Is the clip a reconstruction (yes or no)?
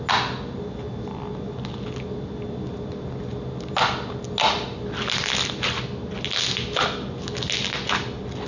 no